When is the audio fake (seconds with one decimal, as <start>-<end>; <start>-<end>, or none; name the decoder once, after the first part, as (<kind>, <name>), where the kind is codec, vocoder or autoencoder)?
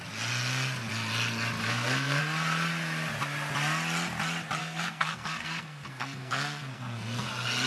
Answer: 1.6-2.2 (codec, SNAC); 4.6-7.3